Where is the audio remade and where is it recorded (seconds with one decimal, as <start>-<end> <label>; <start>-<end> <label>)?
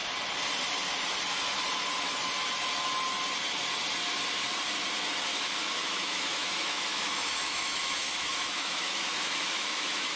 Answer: 0.0-5.3 recorded; 5.3-10.2 remade